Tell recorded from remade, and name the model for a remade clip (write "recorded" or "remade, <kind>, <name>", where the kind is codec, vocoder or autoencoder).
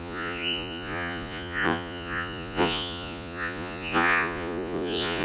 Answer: remade, vocoder, Vocos